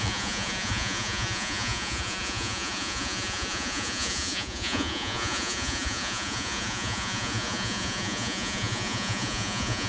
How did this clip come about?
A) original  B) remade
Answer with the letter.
B